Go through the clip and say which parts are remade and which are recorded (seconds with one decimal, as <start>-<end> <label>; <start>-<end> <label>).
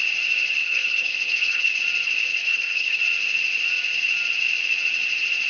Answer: 0.0-0.6 recorded; 0.6-1.8 remade; 1.8-2.3 recorded; 2.3-3.0 remade; 3.0-5.5 recorded